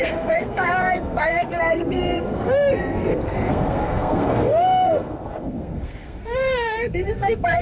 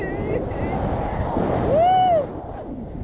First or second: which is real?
second